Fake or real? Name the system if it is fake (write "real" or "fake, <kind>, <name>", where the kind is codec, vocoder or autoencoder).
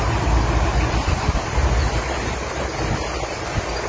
real